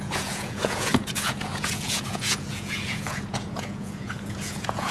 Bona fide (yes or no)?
no